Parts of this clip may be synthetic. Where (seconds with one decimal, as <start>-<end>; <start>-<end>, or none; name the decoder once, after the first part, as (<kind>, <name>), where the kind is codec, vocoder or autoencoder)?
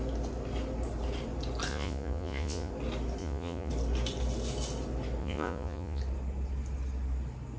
1.7-2.7 (vocoder, Vocos); 3.2-3.7; 5.2-6.0